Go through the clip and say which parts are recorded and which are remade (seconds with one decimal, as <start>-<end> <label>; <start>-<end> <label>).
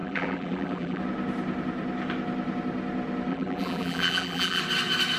0.0-1.0 remade; 1.0-3.3 recorded; 3.3-4.6 remade; 4.6-5.2 recorded